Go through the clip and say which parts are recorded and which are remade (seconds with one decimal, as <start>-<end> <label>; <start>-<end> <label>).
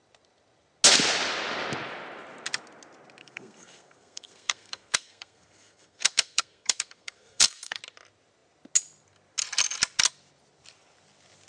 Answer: 0.0-3.2 recorded; 3.2-7.8 remade; 7.8-11.5 recorded